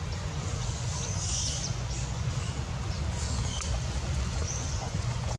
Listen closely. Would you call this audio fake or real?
fake